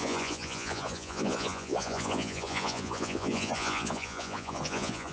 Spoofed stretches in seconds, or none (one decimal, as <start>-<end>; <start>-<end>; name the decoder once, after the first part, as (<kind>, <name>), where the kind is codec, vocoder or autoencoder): 0.0-5.1 (vocoder, Vocos)